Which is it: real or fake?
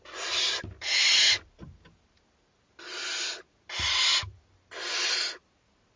real